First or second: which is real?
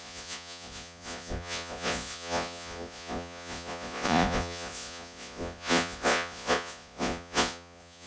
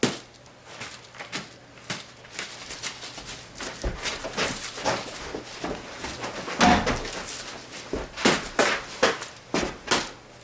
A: second